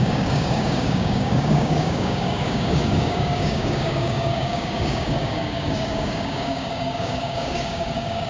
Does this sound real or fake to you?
fake